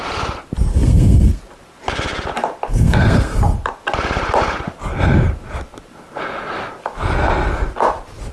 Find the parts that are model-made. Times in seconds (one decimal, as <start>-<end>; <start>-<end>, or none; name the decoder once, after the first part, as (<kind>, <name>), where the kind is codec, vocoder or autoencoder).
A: 0.7-1.4 (codec, SNAC); 2.7-3.4